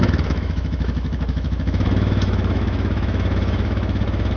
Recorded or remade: remade